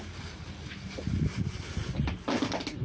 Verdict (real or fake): real